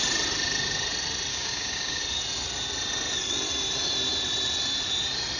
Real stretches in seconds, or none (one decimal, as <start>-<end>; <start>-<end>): 0.0-1.3; 2.0-5.4